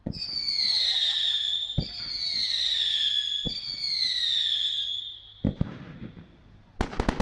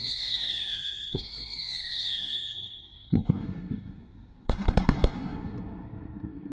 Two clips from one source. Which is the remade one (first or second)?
second